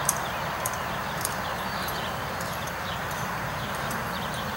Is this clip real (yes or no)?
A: no